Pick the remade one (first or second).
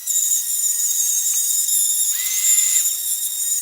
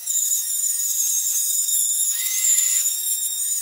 second